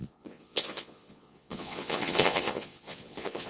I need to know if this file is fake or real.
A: fake